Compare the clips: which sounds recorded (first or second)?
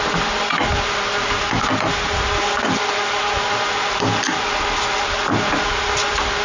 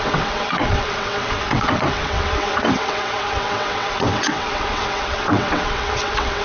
first